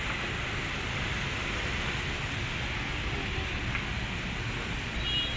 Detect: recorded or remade recorded